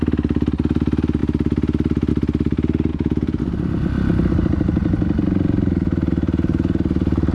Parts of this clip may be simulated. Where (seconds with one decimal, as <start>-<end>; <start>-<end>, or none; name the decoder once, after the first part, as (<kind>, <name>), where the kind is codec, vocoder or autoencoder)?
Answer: 2.9-3.4 (vocoder, Vocos)